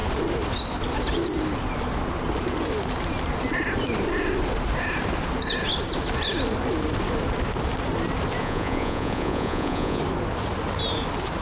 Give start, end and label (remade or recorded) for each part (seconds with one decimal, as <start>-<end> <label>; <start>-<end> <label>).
0.0-8.4 recorded; 8.4-10.0 remade; 10.0-11.4 recorded